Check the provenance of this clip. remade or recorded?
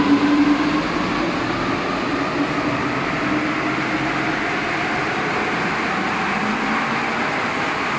recorded